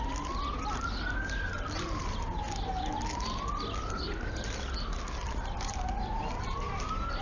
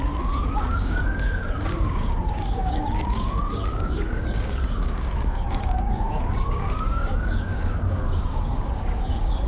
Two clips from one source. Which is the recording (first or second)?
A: first